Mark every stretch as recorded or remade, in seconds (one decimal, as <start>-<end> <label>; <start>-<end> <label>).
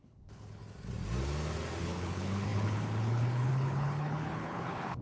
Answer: 0.0-0.6 remade; 0.6-1.8 recorded; 1.8-5.0 remade